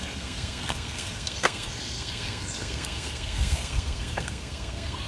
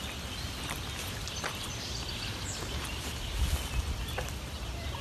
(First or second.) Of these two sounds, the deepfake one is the first